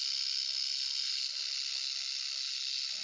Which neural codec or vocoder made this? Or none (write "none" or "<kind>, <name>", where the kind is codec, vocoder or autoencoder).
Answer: none